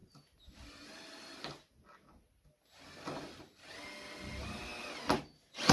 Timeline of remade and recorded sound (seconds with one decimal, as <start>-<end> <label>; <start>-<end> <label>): 0.0-5.7 recorded